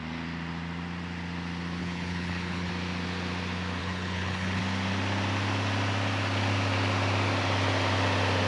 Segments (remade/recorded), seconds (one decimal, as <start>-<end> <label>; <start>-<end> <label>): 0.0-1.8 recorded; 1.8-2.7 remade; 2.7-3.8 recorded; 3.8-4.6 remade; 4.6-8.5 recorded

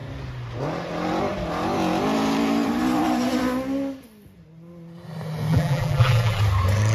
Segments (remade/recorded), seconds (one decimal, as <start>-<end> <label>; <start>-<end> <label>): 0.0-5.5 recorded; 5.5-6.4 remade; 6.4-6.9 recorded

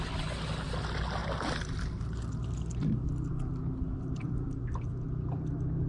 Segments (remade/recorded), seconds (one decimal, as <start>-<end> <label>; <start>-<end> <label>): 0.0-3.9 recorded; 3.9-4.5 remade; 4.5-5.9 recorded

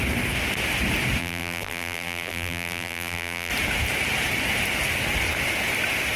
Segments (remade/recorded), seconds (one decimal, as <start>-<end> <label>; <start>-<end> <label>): 0.0-1.2 recorded; 1.2-3.5 remade; 3.5-6.2 recorded

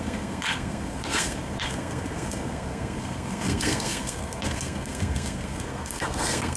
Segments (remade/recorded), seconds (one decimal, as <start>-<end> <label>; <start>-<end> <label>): 0.0-6.6 remade

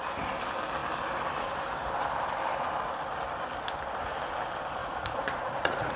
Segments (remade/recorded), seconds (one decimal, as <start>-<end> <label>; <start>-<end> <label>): 0.0-4.8 recorded; 4.8-6.0 remade

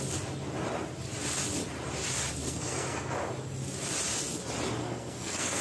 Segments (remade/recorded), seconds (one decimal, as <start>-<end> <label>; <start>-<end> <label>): 0.0-2.4 recorded; 2.4-3.1 remade; 3.1-4.8 recorded; 4.8-5.6 remade